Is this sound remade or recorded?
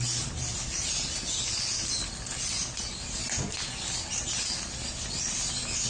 recorded